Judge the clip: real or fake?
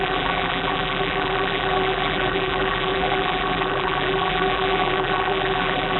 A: fake